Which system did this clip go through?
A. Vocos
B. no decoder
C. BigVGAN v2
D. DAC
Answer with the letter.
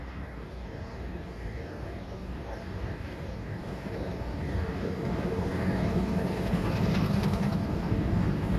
D